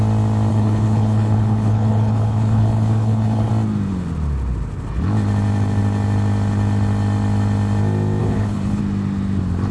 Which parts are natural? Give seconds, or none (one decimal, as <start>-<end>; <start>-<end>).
0.0-0.5; 3.5-8.2; 8.8-9.7